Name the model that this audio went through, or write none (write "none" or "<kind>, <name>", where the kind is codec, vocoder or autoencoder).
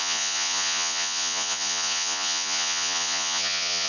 vocoder, Vocos